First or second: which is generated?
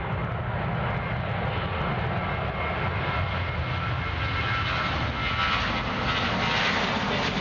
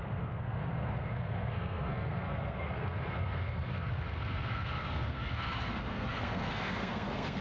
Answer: second